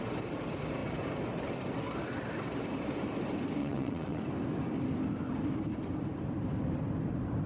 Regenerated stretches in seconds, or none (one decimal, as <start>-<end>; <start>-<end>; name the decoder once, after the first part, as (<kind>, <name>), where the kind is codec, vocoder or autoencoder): 3.6-4.2 (vocoder, WaveNeXt)